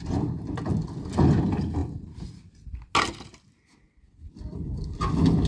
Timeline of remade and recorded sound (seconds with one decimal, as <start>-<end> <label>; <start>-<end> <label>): 0.0-5.5 recorded